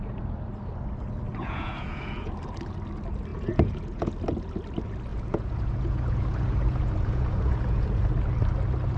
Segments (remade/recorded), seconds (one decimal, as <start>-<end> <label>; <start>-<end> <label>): 0.0-1.3 recorded; 1.3-2.3 remade; 2.3-3.3 recorded; 3.3-4.1 remade; 4.1-5.1 recorded; 5.1-8.0 remade; 8.0-9.0 recorded